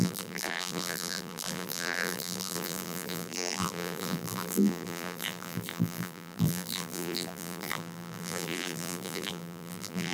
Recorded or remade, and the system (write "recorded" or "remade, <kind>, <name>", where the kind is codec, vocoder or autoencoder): remade, vocoder, BigVGAN v2